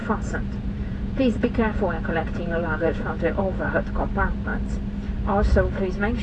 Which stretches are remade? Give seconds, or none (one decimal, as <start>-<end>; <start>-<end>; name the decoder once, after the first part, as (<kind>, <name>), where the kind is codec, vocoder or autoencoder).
0.0-3.3 (vocoder, Vocos)